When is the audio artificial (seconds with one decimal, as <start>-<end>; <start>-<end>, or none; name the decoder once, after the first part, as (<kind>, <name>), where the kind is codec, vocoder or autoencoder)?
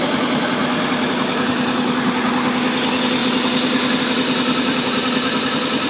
none